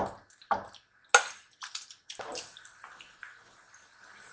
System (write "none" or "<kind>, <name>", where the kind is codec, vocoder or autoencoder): none